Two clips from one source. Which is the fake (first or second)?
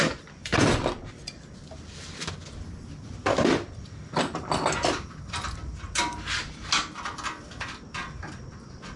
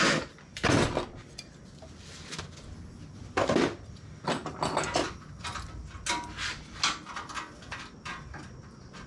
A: first